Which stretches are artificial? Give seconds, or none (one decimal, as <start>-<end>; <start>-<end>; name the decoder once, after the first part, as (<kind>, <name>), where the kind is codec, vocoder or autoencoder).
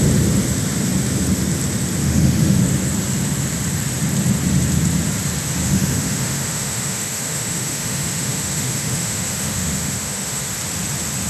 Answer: 2.0-2.6 (autoencoder, DAC-VAE); 5.6-10.5